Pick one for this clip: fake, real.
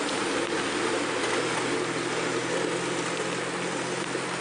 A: real